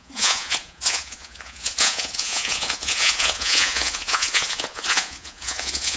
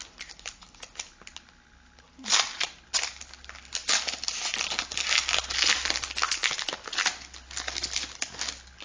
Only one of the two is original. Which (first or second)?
second